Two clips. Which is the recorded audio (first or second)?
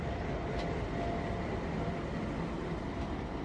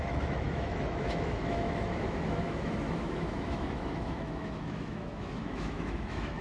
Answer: first